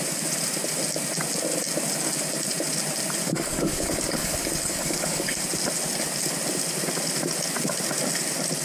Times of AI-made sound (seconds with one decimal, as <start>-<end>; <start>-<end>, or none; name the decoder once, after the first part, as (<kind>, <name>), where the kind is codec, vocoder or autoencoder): 3.2-5.4 (codec, DAC)